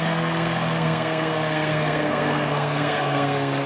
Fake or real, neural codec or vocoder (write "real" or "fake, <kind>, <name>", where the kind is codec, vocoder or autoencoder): fake, codec, SNAC